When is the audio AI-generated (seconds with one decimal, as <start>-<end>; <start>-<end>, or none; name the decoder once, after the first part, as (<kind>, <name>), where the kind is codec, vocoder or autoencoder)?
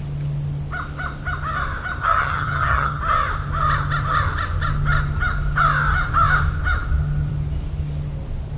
2.0-3.0 (vocoder, HiFi-GAN)